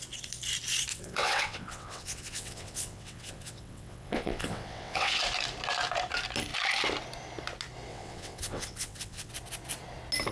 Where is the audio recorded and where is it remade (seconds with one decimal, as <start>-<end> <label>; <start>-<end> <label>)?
0.0-0.9 recorded; 0.9-5.2 remade; 5.2-7.9 recorded; 7.9-9.3 remade; 9.3-10.3 recorded